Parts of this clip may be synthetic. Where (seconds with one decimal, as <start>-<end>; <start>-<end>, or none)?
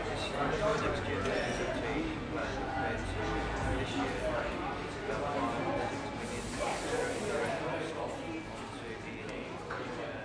0.7-1.7; 2.4-3.2